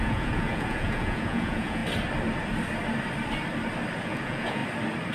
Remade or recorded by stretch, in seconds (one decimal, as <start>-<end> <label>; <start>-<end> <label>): 0.0-1.8 remade; 1.8-4.0 recorded; 4.0-4.6 remade; 4.6-5.1 recorded